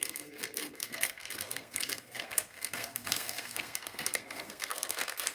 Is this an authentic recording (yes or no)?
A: no